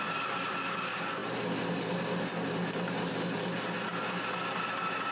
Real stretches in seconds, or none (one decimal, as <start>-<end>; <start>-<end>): 0.0-5.1